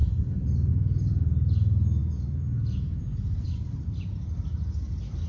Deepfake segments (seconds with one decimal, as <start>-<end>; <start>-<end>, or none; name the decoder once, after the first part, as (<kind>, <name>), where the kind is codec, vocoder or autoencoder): 2.0-3.7 (vocoder, Vocos)